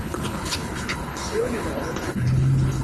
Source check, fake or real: fake